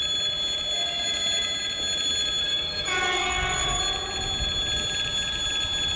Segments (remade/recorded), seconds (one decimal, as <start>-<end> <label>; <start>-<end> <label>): 0.0-2.4 recorded; 2.4-3.8 remade; 3.8-6.0 recorded